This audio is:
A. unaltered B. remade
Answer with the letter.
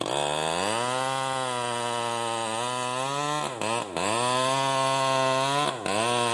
A